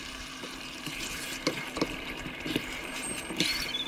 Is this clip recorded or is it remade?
remade